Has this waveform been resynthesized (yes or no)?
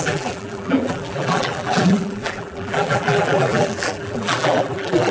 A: yes